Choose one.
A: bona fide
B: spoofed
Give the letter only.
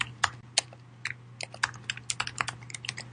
A